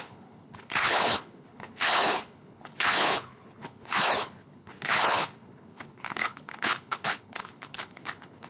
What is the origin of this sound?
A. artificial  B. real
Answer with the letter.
A